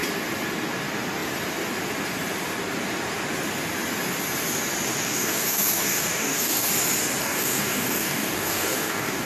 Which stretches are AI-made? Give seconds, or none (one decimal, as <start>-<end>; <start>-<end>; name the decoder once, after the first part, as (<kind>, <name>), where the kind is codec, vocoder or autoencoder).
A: 4.9-6.7 (codec, DAC); 7.2-9.3